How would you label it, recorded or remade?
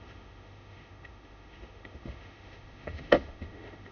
remade